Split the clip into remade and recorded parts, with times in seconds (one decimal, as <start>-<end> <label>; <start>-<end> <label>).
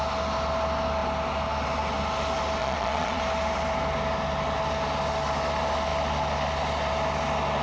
0.0-2.6 recorded; 2.6-3.2 remade; 3.2-7.6 recorded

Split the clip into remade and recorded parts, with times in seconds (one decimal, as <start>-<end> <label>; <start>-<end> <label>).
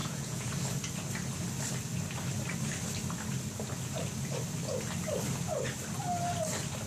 0.0-0.5 remade; 0.5-6.9 recorded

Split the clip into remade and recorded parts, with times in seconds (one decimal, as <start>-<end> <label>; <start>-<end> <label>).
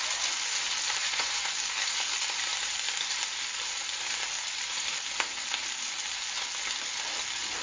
0.0-1.0 recorded; 1.0-1.5 remade; 1.5-7.6 recorded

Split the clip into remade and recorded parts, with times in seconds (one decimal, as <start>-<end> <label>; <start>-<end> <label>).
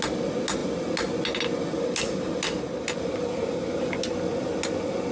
0.0-5.1 recorded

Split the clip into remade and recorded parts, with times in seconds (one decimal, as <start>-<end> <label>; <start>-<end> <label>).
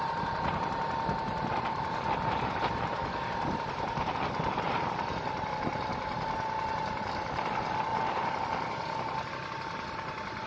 0.0-10.5 recorded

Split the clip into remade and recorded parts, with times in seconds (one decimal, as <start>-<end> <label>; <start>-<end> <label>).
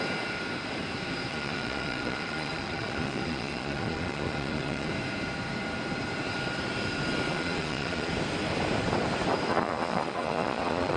0.0-1.3 recorded; 1.3-4.9 remade; 4.9-7.3 recorded; 7.3-8.1 remade; 8.1-9.5 recorded; 9.5-11.0 remade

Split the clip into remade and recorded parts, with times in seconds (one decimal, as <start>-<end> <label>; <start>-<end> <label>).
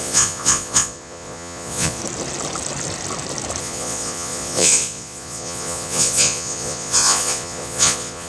0.0-2.0 remade; 2.0-3.6 recorded; 3.6-8.3 remade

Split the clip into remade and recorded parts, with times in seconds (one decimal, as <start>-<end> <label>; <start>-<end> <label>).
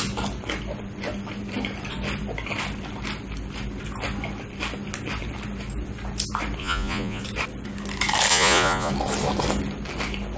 0.0-6.6 recorded; 6.6-7.2 remade; 7.2-8.3 recorded; 8.3-8.9 remade; 8.9-10.4 recorded